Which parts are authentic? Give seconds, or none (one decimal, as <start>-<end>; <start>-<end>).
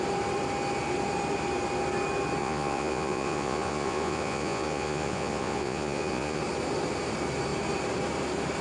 0.0-2.4; 6.4-8.6